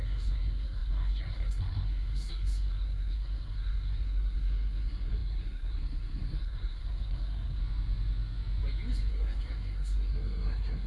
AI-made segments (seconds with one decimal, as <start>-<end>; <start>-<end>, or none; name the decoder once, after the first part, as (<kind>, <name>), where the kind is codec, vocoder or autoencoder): 0.0-7.6 (codec, SNAC); 9.1-10.9